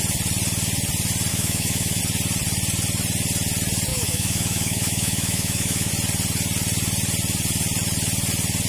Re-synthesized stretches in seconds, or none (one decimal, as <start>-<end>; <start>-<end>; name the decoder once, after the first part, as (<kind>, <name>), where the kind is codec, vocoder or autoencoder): 1.3-2.0 (autoencoder, DAC-VAE); 3.9-5.9